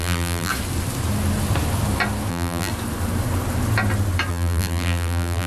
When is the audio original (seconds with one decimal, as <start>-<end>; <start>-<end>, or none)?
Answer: 0.5-2.3; 2.7-4.3